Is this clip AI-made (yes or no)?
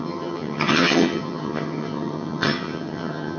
yes